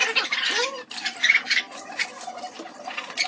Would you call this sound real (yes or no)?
yes